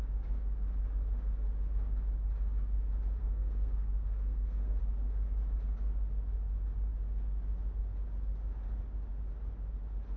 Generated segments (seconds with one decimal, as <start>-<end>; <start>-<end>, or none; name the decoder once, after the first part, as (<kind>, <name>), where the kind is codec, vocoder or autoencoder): 3.2-4.8 (codec, SNAC)